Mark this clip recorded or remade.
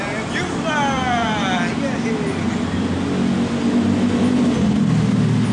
recorded